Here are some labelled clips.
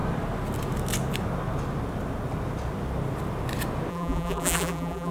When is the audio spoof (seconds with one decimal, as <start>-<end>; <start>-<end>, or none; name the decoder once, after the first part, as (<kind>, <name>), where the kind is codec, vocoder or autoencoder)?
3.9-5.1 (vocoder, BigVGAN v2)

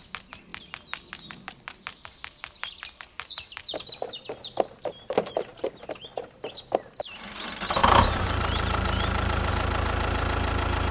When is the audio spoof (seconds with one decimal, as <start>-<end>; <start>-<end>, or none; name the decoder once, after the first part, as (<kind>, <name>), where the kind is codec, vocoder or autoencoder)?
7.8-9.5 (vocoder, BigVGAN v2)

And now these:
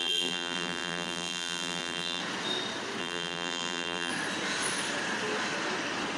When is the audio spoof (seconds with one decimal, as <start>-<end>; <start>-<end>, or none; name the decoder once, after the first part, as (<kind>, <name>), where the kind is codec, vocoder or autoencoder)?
0.0-2.2 (vocoder, BigVGAN v2); 3.0-4.1